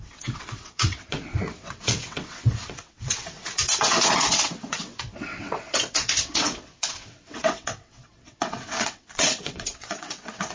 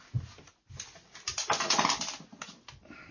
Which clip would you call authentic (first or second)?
second